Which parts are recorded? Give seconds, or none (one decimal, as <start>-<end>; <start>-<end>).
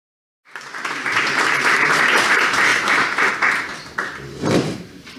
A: 3.7-4.3